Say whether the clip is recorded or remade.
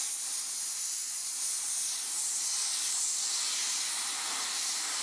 recorded